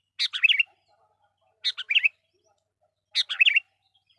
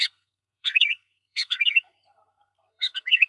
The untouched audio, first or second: first